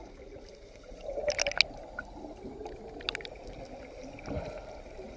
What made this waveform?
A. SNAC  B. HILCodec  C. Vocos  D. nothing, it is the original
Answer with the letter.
D